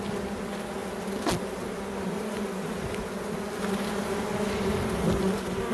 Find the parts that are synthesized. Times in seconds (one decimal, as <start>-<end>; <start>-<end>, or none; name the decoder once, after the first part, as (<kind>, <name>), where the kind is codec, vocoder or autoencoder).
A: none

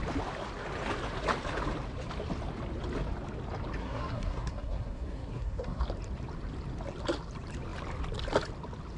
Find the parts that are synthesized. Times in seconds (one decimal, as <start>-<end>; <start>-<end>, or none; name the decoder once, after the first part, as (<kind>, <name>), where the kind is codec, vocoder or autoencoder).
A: 3.8-5.8 (codec, SNAC)

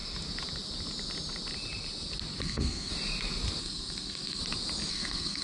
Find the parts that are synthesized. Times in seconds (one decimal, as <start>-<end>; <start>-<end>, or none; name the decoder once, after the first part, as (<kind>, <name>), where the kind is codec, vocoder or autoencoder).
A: 2.4-2.9 (codec, SNAC); 3.6-4.4; 4.9-5.4